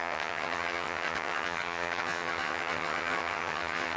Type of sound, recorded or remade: remade